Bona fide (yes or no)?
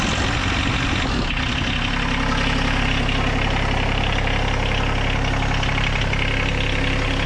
yes